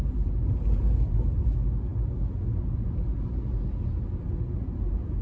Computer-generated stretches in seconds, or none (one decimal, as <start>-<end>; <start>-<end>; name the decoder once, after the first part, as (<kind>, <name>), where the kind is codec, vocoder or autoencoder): none